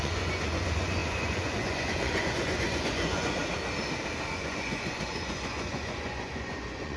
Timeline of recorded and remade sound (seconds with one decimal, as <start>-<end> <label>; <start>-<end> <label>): 0.0-3.4 remade; 3.4-4.3 recorded; 4.3-7.0 remade